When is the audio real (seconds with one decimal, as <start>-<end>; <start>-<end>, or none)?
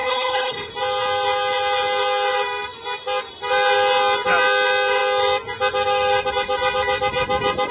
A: 0.7-7.7